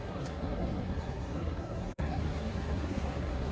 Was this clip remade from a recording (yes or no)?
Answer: yes